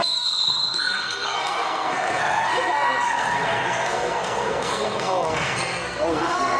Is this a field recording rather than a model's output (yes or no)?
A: no